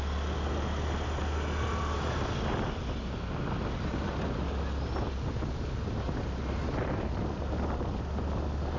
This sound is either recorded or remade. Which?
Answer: recorded